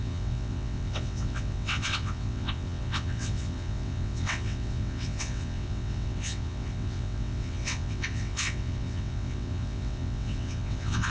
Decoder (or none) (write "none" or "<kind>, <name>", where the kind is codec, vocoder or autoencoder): vocoder, WaveNeXt